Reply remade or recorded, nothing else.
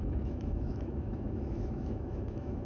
remade